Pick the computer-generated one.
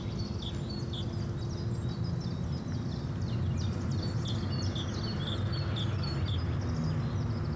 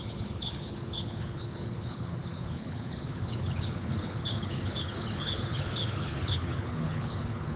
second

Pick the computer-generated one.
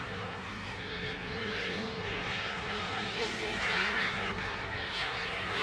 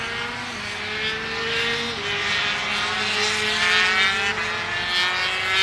first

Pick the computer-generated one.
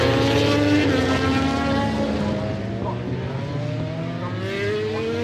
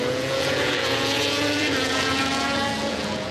second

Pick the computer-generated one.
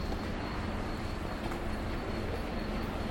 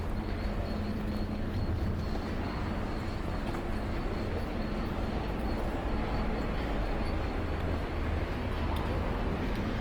first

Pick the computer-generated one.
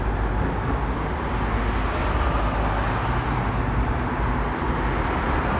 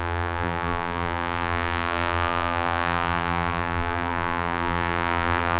second